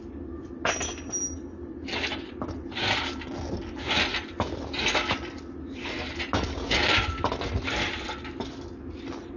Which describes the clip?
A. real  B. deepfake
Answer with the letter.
A